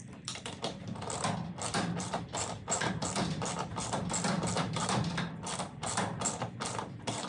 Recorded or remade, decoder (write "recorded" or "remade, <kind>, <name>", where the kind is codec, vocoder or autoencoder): remade, vocoder, BigVGAN v2